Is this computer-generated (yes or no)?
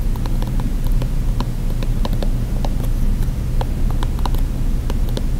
no